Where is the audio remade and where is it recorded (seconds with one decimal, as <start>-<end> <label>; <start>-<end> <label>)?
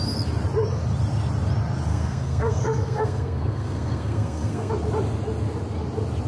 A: 0.0-1.9 recorded; 1.9-4.7 remade; 4.7-6.3 recorded